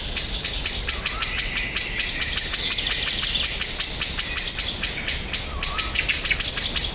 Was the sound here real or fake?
real